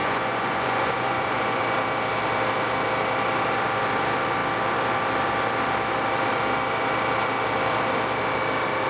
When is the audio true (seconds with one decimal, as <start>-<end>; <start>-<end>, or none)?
1.6-8.9